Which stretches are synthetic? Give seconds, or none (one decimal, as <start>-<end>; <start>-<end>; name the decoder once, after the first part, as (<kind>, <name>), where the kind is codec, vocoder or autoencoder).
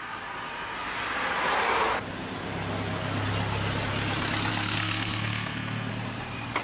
4.5-5.9 (codec, SNAC)